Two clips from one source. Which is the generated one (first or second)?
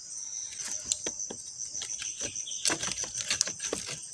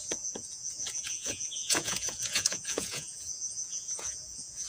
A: second